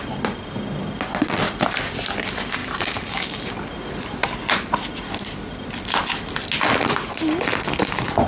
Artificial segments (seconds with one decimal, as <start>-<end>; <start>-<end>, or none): 2.6-3.5

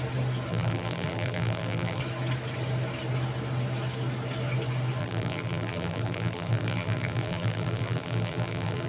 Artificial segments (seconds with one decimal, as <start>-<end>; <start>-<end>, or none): 0.5-2.0; 5.0-8.9

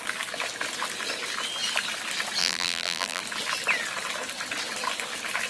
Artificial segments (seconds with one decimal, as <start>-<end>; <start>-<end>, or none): 2.4-3.2

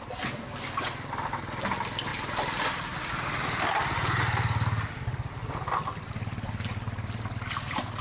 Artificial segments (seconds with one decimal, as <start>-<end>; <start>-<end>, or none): none

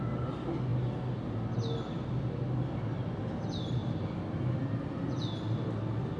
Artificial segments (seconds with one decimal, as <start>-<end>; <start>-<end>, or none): none